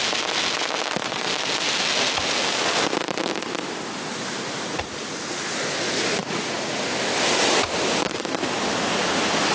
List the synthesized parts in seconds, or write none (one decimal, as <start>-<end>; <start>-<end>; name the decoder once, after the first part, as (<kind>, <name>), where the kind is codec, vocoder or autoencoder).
6.2-6.8 (vocoder, Vocos)